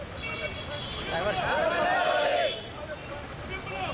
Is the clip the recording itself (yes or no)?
yes